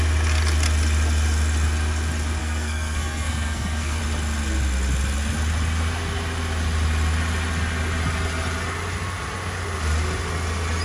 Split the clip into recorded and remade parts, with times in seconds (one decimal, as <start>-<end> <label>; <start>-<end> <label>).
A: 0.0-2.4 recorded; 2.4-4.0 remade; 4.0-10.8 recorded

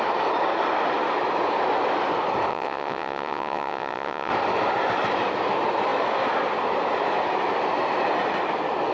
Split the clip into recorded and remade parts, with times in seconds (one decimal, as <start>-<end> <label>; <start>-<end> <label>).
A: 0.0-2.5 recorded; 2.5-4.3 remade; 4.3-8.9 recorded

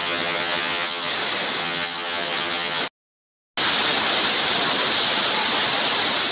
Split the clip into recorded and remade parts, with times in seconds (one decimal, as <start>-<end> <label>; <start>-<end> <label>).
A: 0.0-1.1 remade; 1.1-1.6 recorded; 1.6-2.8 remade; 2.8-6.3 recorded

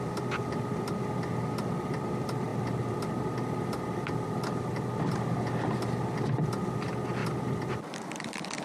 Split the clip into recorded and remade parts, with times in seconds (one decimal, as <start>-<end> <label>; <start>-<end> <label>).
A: 0.0-2.5 recorded; 2.5-4.7 remade; 4.7-7.2 recorded; 7.2-7.8 remade; 7.8-8.6 recorded

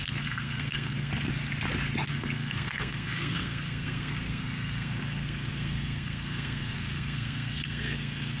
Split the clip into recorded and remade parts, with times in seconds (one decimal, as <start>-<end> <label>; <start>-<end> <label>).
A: 0.0-1.1 remade; 1.1-2.1 recorded; 2.1-8.4 remade

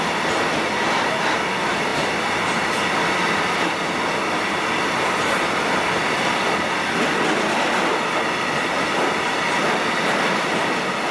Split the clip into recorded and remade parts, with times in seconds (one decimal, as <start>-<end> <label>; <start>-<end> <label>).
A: 0.0-11.1 recorded

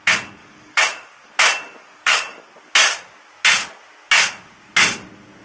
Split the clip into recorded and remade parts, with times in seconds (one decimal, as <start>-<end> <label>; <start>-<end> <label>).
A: 0.0-0.4 recorded; 0.4-1.3 remade; 1.3-1.8 recorded; 1.8-2.5 remade; 2.5-5.4 recorded